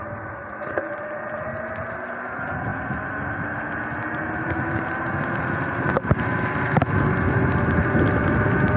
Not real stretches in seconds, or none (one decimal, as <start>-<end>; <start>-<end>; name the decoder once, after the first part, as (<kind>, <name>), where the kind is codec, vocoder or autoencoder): none